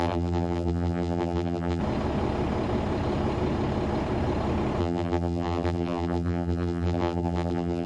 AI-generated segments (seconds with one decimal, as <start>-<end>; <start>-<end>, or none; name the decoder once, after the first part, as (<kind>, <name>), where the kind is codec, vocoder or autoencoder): 0.0-1.8 (vocoder, BigVGAN v2); 4.8-7.9